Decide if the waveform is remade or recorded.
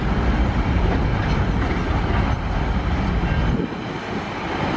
recorded